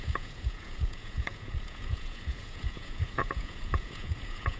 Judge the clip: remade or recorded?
remade